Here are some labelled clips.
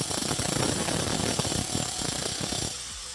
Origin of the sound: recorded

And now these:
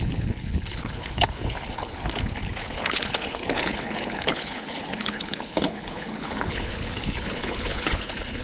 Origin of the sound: remade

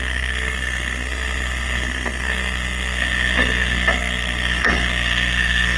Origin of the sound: remade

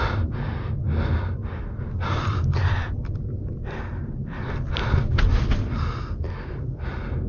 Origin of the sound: recorded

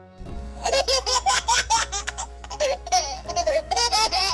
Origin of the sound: remade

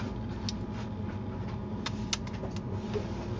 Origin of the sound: recorded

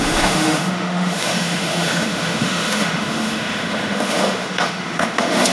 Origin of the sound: remade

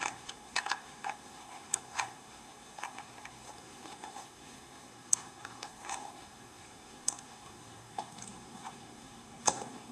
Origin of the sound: remade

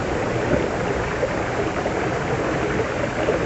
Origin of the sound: recorded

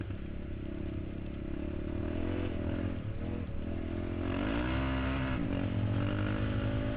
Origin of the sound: recorded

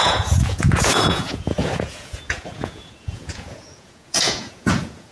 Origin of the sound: remade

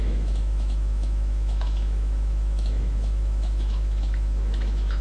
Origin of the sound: remade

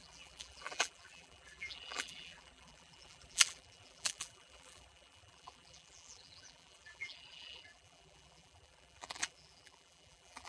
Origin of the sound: remade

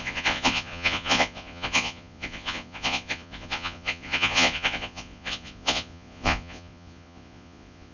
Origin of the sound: remade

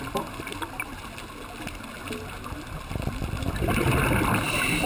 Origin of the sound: recorded